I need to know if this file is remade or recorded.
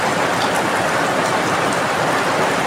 recorded